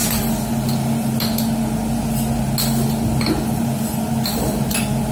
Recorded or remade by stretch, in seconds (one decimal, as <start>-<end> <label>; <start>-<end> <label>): 0.0-5.1 recorded